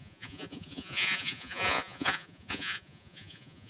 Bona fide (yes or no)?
no